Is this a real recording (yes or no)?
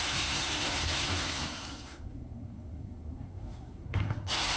no